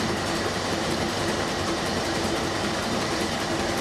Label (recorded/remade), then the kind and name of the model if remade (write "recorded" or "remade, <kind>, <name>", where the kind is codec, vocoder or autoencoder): remade, vocoder, BigVGAN v2